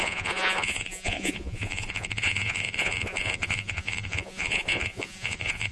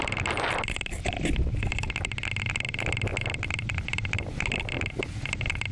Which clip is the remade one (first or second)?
first